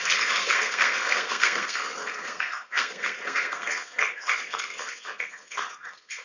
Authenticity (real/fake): fake